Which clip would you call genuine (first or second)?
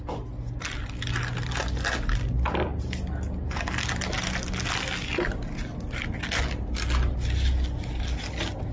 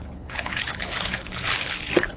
first